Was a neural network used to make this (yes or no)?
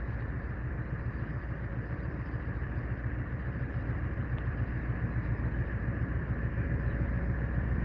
no